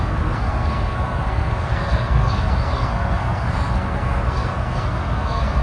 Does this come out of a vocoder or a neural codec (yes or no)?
yes